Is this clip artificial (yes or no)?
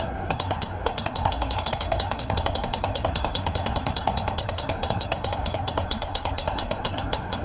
yes